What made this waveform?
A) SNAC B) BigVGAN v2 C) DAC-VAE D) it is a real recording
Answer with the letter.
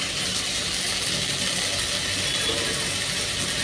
D